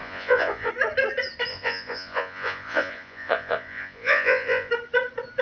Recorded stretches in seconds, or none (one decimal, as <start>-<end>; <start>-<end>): 0.7-1.5; 4.7-5.4